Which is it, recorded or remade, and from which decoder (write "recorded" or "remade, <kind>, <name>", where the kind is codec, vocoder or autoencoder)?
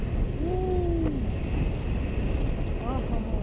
recorded